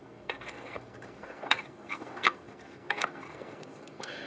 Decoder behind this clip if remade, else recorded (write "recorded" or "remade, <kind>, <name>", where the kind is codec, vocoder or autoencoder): remade, codec, SNAC